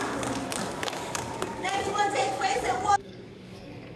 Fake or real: fake